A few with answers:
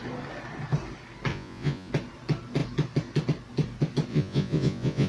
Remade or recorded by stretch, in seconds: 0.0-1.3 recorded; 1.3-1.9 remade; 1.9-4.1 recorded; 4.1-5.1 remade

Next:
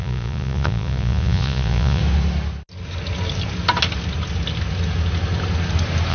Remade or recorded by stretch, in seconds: 0.0-2.0 remade; 2.0-6.1 recorded

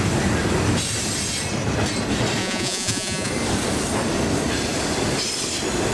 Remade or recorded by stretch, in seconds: 0.0-2.4 recorded; 2.4-3.3 remade; 3.3-5.9 recorded

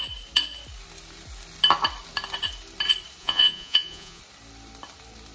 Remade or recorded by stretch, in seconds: 0.0-3.2 recorded; 3.2-4.2 remade; 4.2-5.3 recorded

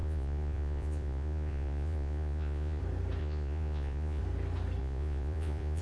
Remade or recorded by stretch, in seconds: 0.0-2.8 remade; 2.8-3.2 recorded; 3.2-4.2 remade; 4.2-4.8 recorded; 4.8-5.8 remade